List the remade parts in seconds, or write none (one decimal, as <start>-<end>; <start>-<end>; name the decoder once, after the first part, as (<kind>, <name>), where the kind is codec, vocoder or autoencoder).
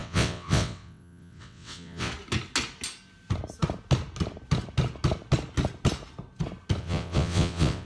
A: 0.0-2.1 (vocoder, WaveNeXt); 6.8-7.9